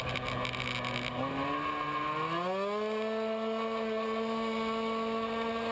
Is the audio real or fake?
real